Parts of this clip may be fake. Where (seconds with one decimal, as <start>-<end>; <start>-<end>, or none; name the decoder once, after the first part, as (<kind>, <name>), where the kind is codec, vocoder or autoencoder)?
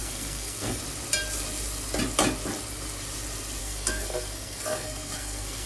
0.0-0.8 (codec, SNAC); 3.6-5.7